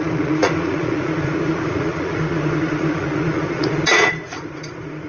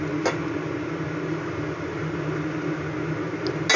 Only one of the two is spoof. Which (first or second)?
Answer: first